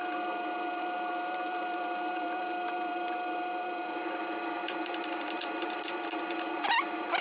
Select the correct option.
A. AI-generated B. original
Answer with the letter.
A